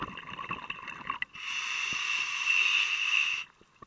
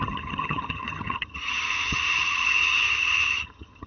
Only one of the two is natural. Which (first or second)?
first